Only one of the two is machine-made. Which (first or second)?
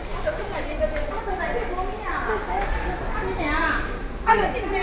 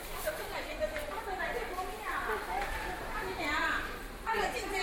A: second